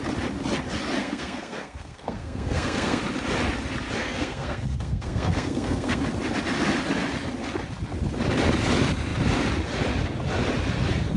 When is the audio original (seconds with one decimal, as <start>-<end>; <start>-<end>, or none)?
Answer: 0.0-1.0; 3.0-4.0; 6.0-11.2